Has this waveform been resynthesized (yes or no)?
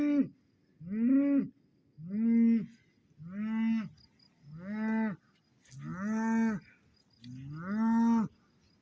no